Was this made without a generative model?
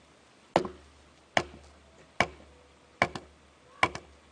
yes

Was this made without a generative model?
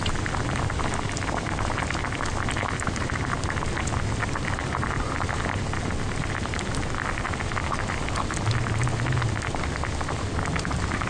yes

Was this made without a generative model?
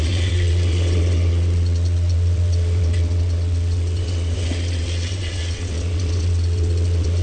no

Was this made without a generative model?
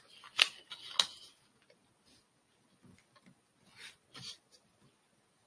yes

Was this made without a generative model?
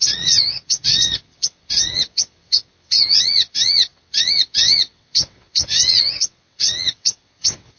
no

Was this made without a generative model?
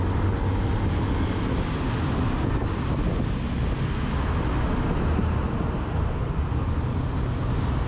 yes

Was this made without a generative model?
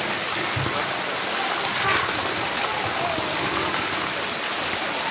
yes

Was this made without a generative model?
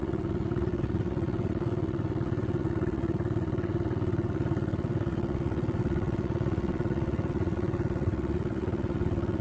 no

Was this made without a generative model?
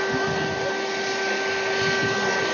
yes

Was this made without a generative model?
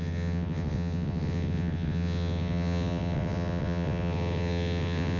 no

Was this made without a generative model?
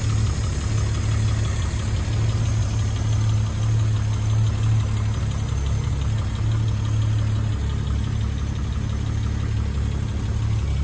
yes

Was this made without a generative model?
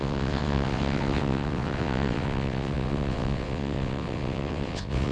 no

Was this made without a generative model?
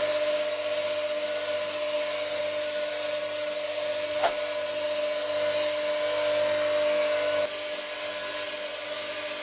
yes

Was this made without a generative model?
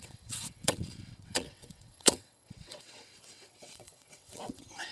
no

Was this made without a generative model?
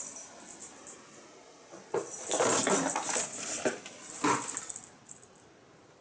yes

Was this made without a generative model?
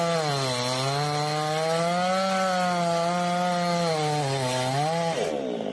yes